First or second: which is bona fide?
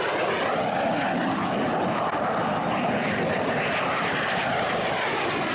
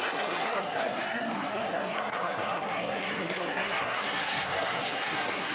first